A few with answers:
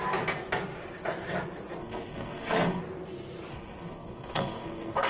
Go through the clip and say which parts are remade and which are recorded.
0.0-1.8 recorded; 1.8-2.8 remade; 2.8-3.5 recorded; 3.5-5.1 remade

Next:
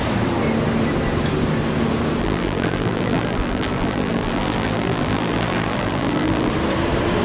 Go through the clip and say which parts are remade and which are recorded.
0.0-2.2 recorded; 2.2-6.5 remade; 6.5-7.2 recorded

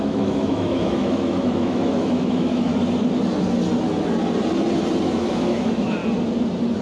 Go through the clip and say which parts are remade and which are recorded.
0.0-2.7 remade; 2.7-5.0 recorded; 5.0-6.0 remade; 6.0-6.8 recorded

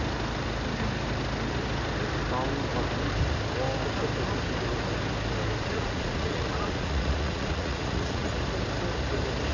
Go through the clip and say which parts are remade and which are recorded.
0.0-5.6 recorded; 5.6-8.4 remade; 8.4-9.5 recorded

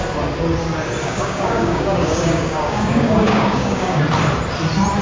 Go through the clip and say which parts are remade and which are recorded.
0.0-1.0 recorded; 1.0-4.0 remade; 4.0-5.0 recorded

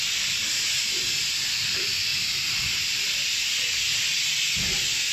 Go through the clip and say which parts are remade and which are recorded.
0.0-5.1 recorded

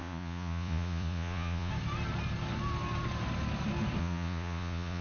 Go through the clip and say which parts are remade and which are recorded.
0.0-1.7 remade; 1.7-4.0 recorded; 4.0-5.0 remade

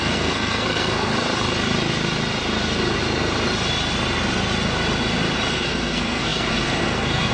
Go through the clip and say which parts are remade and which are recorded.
0.0-1.1 remade; 1.1-5.5 recorded; 5.5-7.3 remade